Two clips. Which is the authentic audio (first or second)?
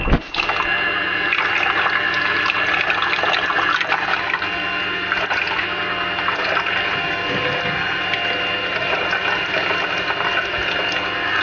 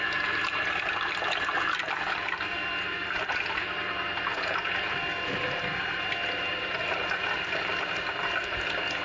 first